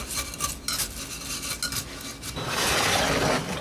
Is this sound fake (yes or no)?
no